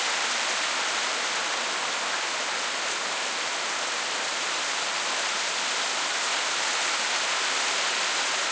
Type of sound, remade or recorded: recorded